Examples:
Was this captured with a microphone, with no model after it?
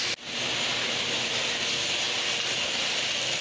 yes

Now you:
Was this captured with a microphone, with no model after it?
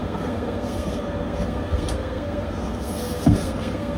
no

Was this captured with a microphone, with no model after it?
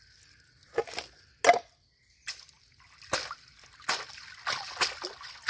yes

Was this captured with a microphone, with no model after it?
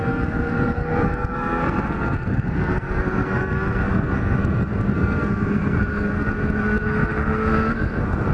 no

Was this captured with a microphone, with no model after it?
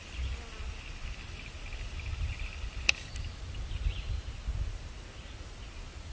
yes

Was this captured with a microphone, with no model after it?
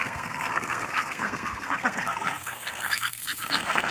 no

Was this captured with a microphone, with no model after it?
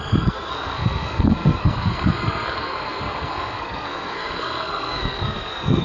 no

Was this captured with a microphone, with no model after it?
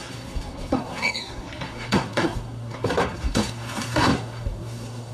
no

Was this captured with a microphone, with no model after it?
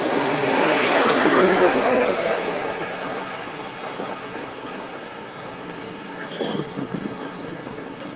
no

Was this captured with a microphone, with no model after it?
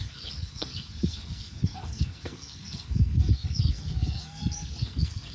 no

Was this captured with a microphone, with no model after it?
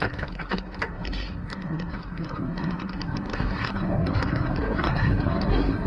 no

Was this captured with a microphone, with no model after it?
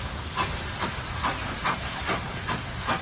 yes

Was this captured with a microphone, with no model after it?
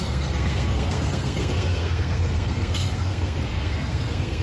no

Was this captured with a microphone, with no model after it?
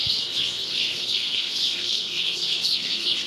no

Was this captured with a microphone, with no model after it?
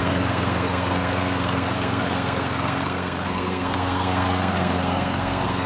no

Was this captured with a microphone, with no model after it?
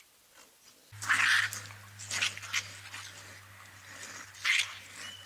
yes